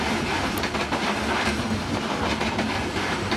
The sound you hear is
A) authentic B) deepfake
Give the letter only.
A